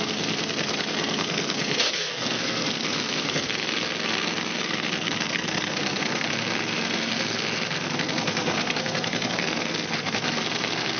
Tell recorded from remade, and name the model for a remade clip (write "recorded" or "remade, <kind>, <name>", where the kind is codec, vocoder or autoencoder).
remade, codec, SNAC